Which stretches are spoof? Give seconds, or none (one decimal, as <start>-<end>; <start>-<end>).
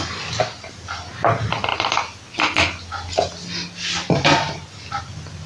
none